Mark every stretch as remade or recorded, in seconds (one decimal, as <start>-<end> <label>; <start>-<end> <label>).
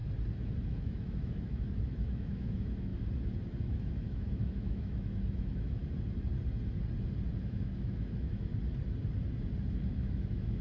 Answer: 0.0-0.6 recorded; 0.6-2.9 remade; 2.9-3.6 recorded; 3.6-5.8 remade; 5.8-7.4 recorded; 7.4-8.5 remade; 8.5-9.7 recorded; 9.7-10.6 remade